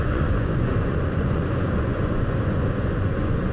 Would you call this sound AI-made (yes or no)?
yes